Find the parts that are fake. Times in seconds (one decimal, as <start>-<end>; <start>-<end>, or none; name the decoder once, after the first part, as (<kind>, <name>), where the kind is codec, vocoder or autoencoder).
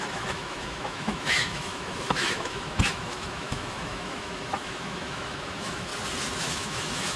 0.0-5.9 (autoencoder, DAC-VAE); 6.4-7.2